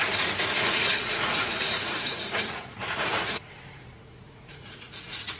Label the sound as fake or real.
fake